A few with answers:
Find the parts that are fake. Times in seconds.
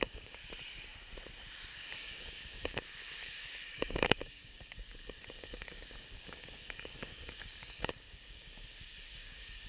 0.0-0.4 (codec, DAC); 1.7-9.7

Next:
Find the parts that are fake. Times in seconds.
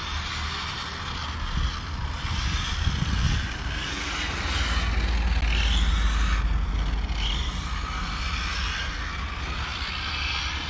none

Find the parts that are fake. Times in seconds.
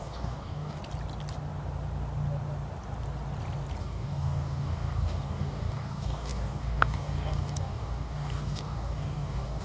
0.0-0.8 (codec, DAC); 3.8-9.6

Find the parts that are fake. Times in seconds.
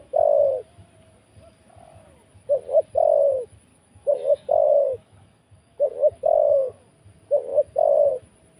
3.7-6.8 (codec, DAC)